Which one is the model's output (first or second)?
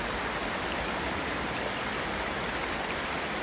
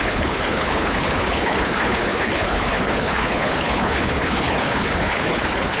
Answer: second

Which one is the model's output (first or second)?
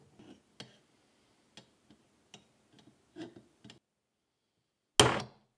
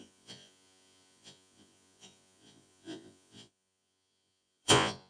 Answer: second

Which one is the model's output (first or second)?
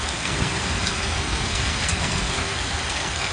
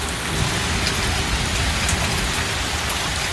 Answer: first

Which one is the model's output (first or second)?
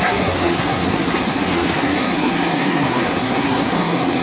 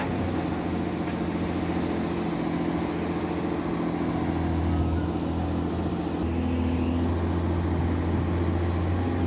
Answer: first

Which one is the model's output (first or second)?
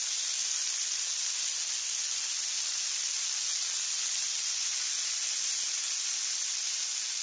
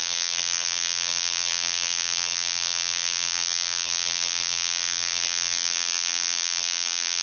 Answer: second